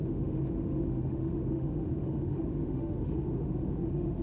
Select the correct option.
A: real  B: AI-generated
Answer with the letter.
B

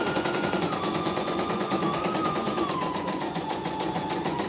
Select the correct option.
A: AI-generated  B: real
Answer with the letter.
A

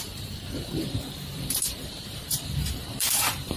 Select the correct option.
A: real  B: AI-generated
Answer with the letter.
B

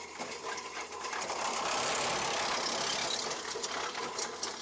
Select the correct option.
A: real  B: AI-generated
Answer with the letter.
A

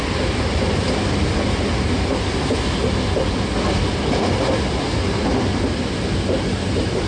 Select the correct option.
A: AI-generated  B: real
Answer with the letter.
B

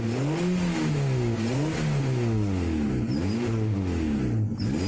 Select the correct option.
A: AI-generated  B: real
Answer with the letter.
B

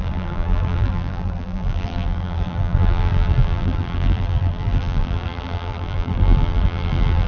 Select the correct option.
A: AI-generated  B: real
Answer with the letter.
A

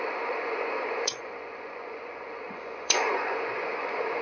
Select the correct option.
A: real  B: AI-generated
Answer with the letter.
B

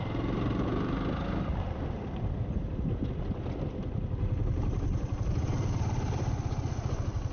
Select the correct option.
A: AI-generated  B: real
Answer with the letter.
B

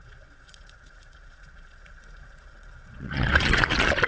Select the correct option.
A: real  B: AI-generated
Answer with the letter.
B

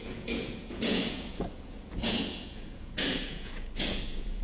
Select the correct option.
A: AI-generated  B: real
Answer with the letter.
A